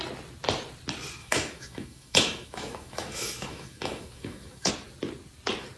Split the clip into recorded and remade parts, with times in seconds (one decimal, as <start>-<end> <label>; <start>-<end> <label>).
0.0-1.2 recorded; 1.2-4.7 remade; 4.7-5.8 recorded